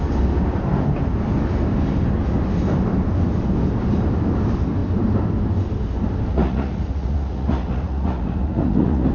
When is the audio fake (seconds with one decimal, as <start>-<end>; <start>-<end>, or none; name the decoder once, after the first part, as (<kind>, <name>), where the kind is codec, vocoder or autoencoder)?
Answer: 6.3-9.1 (vocoder, Vocos)